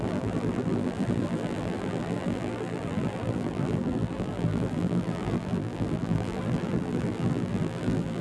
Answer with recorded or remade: remade